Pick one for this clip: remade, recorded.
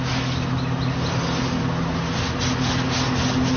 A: recorded